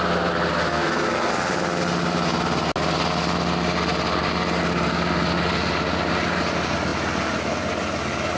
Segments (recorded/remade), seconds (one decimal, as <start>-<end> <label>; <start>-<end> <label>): 0.0-0.7 recorded; 0.7-1.3 remade; 1.3-8.4 recorded